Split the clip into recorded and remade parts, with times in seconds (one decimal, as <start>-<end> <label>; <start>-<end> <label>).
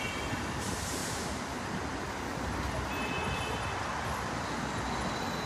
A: 0.0-1.0 recorded; 1.0-2.0 remade; 2.0-5.5 recorded